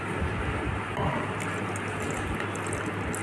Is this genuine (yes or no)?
yes